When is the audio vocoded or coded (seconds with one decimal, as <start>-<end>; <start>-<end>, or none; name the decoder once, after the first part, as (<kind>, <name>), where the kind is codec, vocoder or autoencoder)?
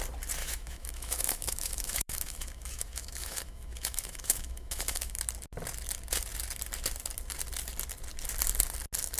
0.4-5.2 (autoencoder, DAC-VAE)